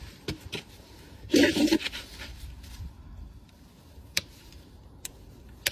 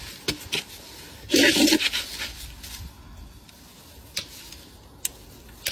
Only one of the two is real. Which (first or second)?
second